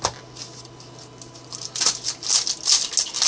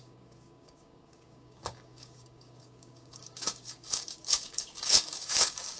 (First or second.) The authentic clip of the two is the first